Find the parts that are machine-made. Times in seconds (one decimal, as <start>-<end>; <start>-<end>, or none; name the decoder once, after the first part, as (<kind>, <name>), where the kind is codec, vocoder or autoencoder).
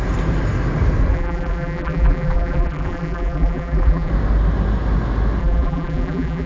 1.1-4.1 (vocoder, BigVGAN v2); 5.4-6.5